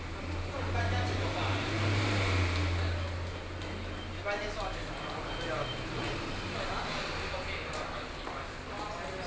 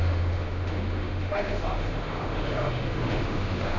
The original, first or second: first